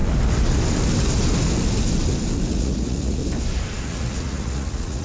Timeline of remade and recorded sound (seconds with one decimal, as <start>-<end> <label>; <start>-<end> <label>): 0.0-2.5 recorded; 2.5-3.2 remade; 3.2-3.8 recorded; 3.8-5.0 remade